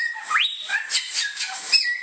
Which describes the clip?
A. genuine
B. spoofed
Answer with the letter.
A